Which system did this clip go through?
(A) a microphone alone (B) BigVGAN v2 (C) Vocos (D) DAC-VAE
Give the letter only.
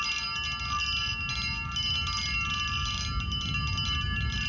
A